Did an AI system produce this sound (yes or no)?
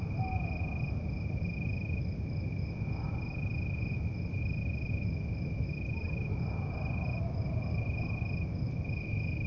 no